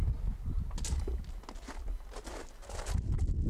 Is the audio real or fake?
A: real